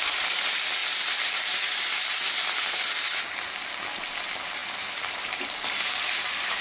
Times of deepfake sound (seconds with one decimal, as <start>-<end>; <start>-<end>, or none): 0.0-0.8; 2.7-3.1; 4.1-6.6